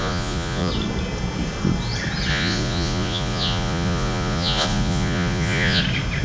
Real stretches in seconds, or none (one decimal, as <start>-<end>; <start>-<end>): 0.7-2.3; 5.8-6.2